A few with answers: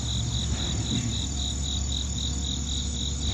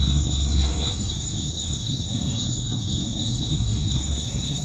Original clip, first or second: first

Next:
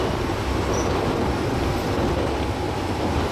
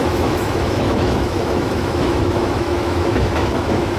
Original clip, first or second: first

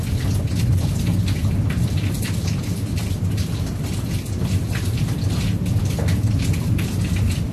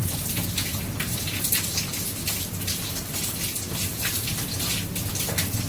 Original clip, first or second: second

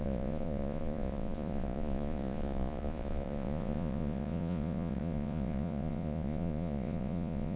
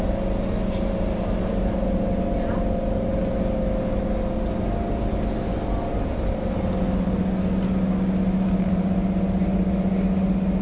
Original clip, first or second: second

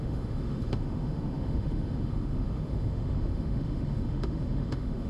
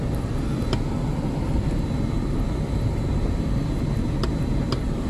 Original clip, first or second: second